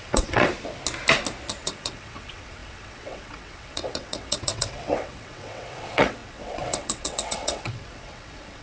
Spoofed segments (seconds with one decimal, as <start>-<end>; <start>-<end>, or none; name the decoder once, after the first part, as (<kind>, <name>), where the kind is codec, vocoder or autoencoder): 0.0-0.5 (vocoder, WaveNeXt); 1.5-8.6